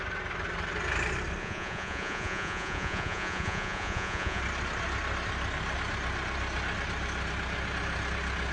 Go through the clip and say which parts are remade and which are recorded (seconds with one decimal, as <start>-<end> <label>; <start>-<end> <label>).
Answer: 0.0-1.4 recorded; 1.4-4.4 remade; 4.4-8.5 recorded